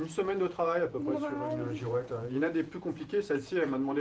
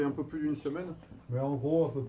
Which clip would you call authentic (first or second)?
second